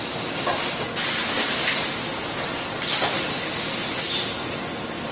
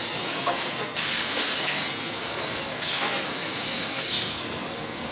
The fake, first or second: second